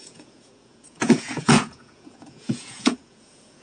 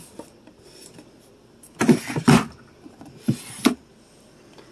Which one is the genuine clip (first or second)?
second